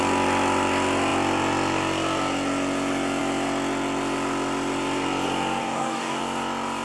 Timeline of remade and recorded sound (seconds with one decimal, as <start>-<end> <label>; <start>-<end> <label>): 0.0-5.6 recorded; 5.6-6.2 remade; 6.2-6.8 recorded